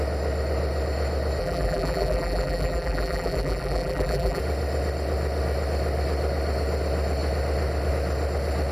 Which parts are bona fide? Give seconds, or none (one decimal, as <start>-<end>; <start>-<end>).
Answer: 0.0-1.4; 4.4-8.7